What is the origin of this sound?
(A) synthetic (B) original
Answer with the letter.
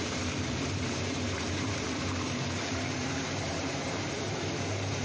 A